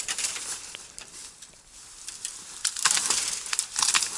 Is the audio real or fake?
fake